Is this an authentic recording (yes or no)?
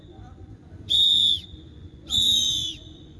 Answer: no